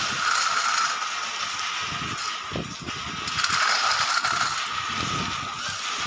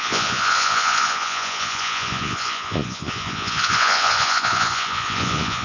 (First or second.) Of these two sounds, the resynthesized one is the second